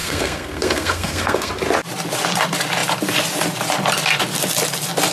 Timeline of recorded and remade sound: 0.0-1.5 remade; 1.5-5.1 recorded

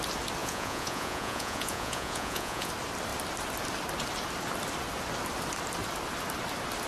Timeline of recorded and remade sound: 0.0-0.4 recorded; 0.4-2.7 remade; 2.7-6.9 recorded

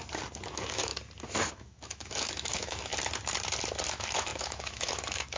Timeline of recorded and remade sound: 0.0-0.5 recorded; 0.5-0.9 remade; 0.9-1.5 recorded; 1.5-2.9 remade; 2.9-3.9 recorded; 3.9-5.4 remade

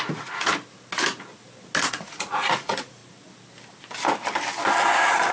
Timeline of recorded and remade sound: 0.0-0.5 remade; 0.5-1.9 recorded; 1.9-3.0 remade; 3.0-5.3 recorded

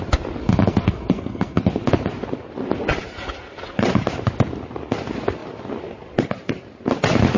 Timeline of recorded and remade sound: 0.0-0.4 recorded; 0.4-1.6 remade; 1.6-7.4 recorded